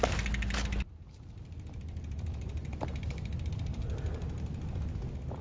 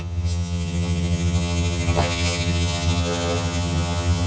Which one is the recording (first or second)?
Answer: first